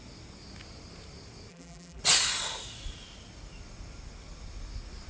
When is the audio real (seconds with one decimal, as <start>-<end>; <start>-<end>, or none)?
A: 0.0-1.5; 2.0-5.1